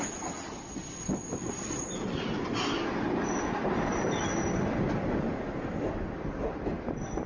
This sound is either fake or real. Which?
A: real